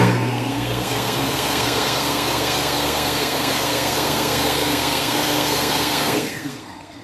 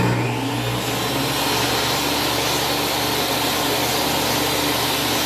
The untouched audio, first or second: second